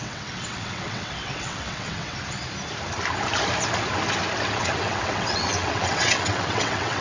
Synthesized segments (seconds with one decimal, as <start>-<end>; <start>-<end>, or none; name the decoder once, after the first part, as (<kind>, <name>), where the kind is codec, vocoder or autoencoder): 0.0-2.2 (vocoder, WaveNeXt); 4.5-7.0